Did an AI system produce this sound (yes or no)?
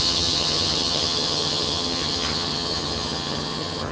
yes